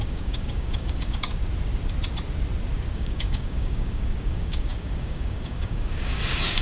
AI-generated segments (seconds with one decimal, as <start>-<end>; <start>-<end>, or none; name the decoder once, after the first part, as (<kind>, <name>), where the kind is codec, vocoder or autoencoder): 0.0-1.4 (codec, DAC); 2.9-6.6